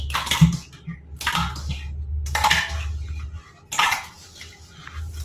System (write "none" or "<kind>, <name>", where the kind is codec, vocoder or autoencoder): none